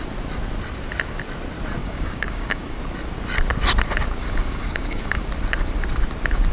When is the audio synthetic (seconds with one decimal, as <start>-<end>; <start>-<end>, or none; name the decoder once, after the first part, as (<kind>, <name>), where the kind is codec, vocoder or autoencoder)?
1.8-2.8 (codec, DAC); 4.2-5.2

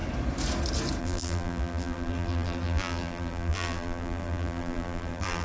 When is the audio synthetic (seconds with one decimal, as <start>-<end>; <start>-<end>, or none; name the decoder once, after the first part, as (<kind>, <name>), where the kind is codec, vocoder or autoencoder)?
1.0-5.4 (vocoder, BigVGAN v2)